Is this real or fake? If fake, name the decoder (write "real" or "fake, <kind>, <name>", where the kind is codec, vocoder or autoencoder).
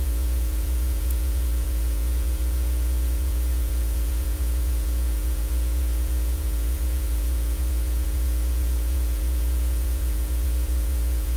fake, vocoder, Vocos